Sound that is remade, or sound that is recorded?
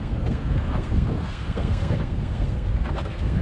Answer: remade